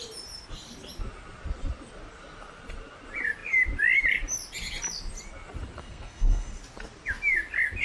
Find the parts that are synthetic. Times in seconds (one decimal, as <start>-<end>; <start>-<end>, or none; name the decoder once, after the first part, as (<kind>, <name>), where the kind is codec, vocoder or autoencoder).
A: 5.8-6.6 (codec, SNAC)